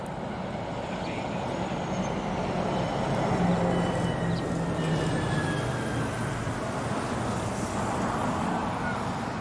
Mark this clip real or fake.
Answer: real